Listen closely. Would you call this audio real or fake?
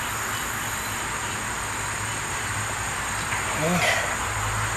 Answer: real